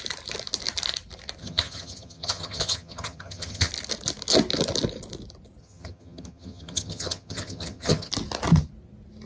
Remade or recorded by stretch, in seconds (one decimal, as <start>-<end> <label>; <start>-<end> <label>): 0.0-1.4 recorded; 1.4-3.7 remade; 3.7-5.6 recorded; 5.6-8.1 remade; 8.1-9.3 recorded